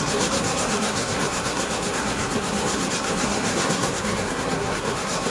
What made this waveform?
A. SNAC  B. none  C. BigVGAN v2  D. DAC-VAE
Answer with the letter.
A